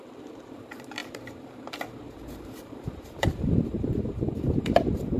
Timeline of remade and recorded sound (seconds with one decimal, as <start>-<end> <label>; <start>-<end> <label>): 0.0-5.2 remade